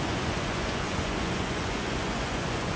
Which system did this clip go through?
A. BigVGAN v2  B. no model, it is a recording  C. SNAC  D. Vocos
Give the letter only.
D